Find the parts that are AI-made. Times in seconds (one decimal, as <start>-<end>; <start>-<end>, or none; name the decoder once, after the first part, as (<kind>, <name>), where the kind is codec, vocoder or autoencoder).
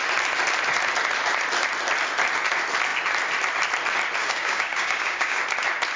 4.2-5.4 (codec, DAC)